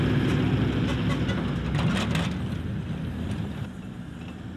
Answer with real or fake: real